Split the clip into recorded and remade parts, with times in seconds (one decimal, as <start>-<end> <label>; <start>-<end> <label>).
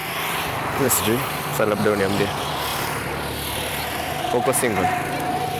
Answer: 0.0-1.0 remade; 1.0-1.5 recorded; 1.5-2.0 remade; 2.0-2.7 recorded; 2.7-4.2 remade; 4.2-5.6 recorded